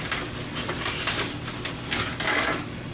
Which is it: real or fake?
real